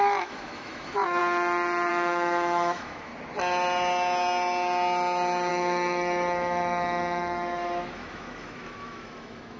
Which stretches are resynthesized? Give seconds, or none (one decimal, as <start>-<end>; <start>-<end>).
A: 0.0-1.2; 1.9-3.1; 5.5-9.6